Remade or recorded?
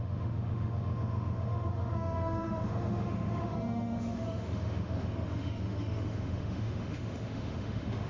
remade